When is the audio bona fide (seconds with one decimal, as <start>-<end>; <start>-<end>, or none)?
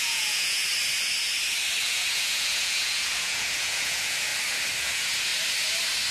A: 0.7-1.8; 4.3-4.8; 5.3-6.1